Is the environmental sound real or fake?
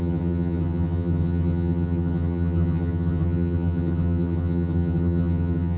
fake